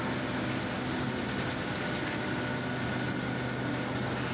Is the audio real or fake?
real